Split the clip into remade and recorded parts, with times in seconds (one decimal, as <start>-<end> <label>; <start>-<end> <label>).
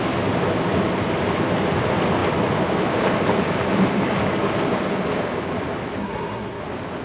0.0-6.0 recorded; 6.0-6.6 remade; 6.6-7.0 recorded